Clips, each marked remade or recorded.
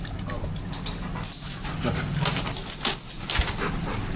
recorded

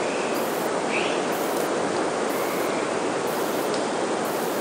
recorded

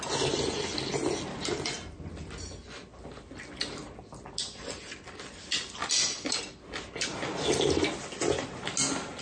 recorded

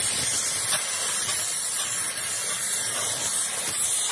remade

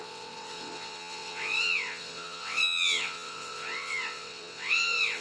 remade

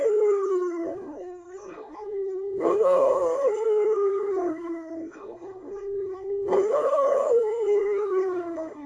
remade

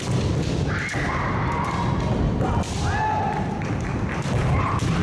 recorded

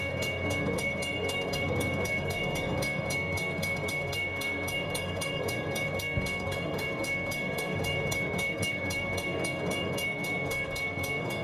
remade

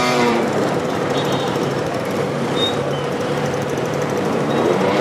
remade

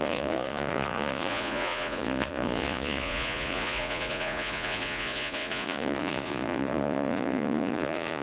remade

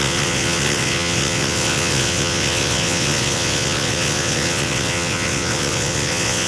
remade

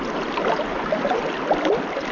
recorded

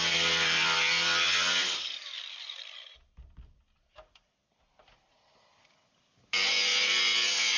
remade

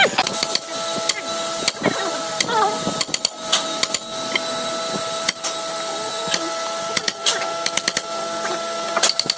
recorded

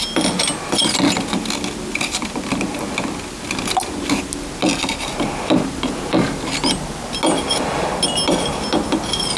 recorded